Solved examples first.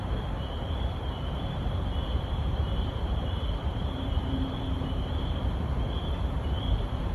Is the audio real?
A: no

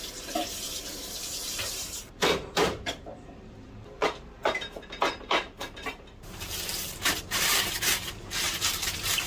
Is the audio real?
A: no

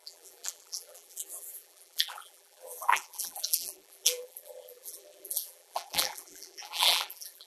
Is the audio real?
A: no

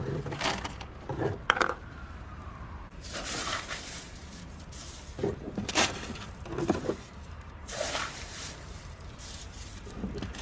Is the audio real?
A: no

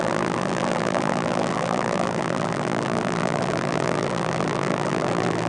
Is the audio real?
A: no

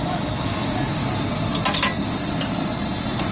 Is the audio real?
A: yes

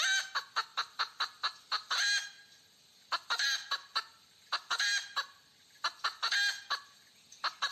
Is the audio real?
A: yes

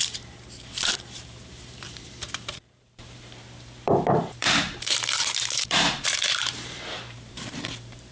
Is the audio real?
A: no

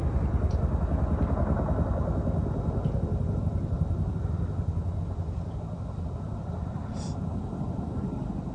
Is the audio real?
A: yes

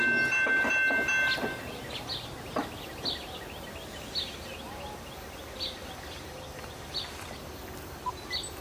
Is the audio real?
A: yes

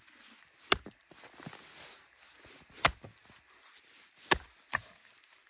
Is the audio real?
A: yes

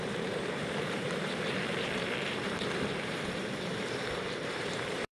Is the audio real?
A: no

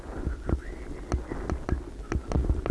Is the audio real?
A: yes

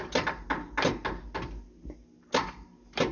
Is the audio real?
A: yes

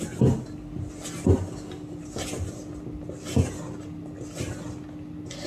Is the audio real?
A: yes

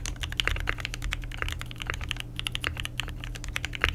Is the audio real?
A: yes